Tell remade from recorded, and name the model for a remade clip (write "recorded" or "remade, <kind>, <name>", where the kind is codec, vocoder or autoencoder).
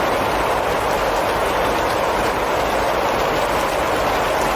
recorded